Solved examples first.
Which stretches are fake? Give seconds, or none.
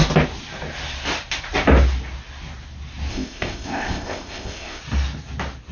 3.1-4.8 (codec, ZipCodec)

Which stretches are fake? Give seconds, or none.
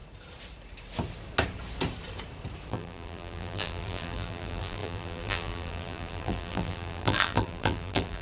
2.7-8.2 (vocoder, BigVGAN v2)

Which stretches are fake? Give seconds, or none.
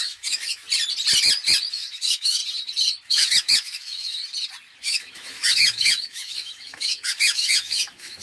0.0-0.6 (autoencoder, DAC-VAE); 1.7-2.4; 3.1-4.2; 4.8-8.2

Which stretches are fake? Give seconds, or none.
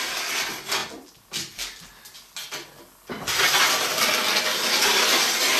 none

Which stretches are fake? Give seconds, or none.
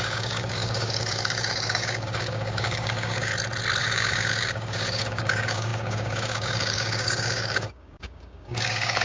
0.0-3.3 (codec, DAC); 3.8-9.0